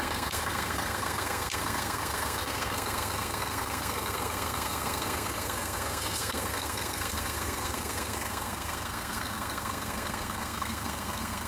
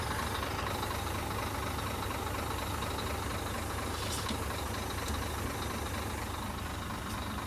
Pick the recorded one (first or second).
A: second